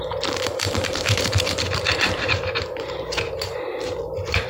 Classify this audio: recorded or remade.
remade